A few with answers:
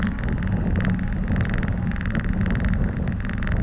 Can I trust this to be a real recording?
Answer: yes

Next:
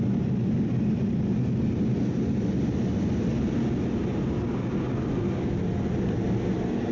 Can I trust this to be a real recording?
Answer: yes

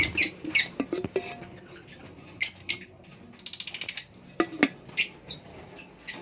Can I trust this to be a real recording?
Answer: yes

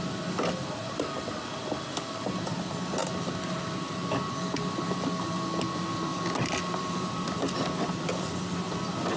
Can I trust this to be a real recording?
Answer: yes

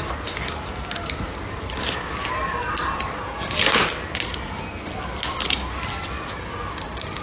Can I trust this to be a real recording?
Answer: yes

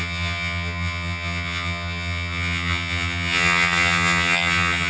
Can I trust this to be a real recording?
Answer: no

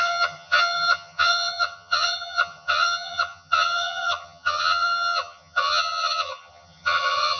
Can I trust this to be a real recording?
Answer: no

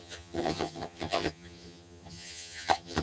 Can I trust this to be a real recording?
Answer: no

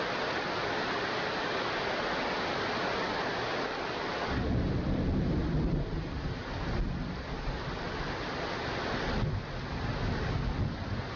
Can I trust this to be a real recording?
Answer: yes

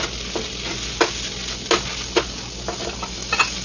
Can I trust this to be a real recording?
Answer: yes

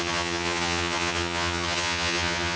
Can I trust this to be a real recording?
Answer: no